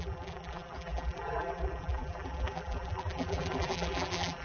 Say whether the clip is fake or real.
fake